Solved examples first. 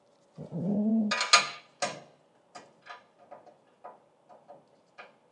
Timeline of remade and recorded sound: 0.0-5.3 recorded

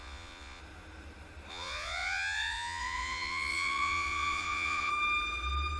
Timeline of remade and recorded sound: 0.0-0.6 remade; 0.6-1.5 recorded; 1.5-4.9 remade; 4.9-5.8 recorded

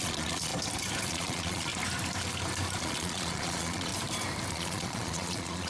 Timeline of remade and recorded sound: 0.0-0.5 remade; 0.5-1.1 recorded; 1.1-1.7 remade; 1.7-2.8 recorded; 2.8-3.9 remade; 3.9-4.5 recorded; 4.5-5.7 remade

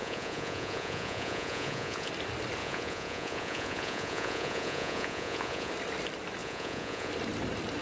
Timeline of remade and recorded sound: 0.0-2.1 remade; 2.1-2.6 recorded; 2.6-5.7 remade; 5.7-6.4 recorded; 6.4-7.1 remade; 7.1-7.8 recorded